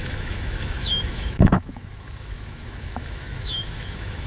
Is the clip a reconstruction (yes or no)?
yes